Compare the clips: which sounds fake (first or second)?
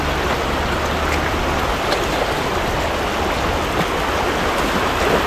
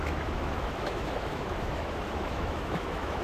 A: second